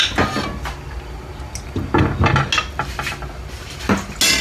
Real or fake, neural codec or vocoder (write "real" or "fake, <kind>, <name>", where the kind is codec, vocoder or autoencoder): real